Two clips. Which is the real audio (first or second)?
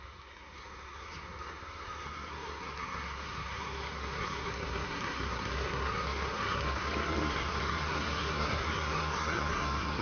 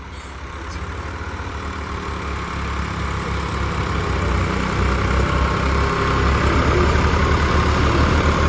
second